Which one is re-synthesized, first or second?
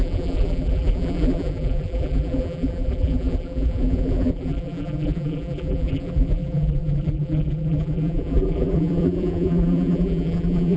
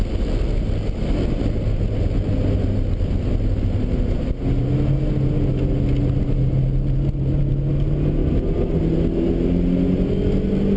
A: first